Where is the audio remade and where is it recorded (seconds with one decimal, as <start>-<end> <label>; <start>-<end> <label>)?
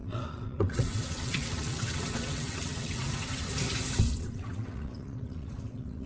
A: 0.0-3.5 remade; 3.5-4.0 recorded; 4.0-6.1 remade